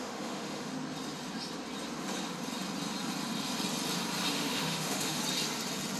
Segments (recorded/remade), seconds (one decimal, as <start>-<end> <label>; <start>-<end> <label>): 0.0-0.7 remade; 0.7-4.3 recorded; 4.3-5.2 remade; 5.2-6.0 recorded